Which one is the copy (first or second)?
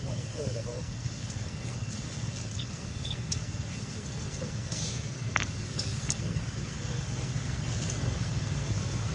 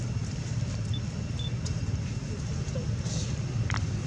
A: first